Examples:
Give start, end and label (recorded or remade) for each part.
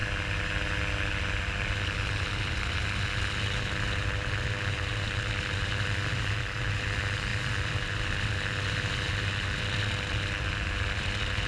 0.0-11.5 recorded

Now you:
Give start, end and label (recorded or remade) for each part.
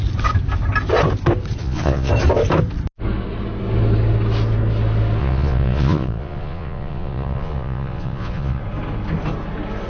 0.0-1.6 recorded; 1.6-2.1 remade; 2.1-5.2 recorded; 5.2-8.6 remade; 8.6-9.9 recorded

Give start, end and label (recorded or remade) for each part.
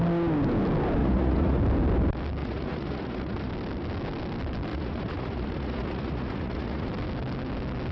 0.0-1.0 recorded; 1.0-1.6 remade; 1.6-2.4 recorded; 2.4-3.5 remade; 3.5-4.7 recorded; 4.7-6.9 remade; 6.9-7.9 recorded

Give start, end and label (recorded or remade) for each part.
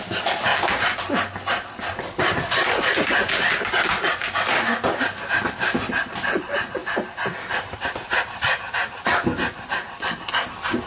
0.0-10.9 recorded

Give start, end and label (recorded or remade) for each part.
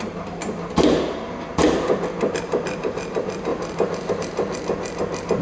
0.0-5.4 recorded